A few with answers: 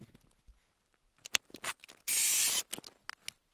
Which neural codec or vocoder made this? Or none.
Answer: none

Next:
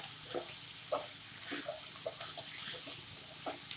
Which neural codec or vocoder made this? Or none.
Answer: none